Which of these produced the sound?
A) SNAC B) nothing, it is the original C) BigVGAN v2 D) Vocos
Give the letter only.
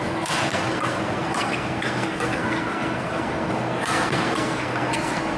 A